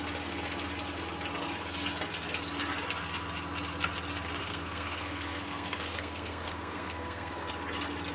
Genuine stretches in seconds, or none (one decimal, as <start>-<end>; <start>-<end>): 0.0-4.4; 7.5-8.1